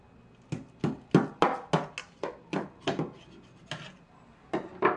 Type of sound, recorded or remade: recorded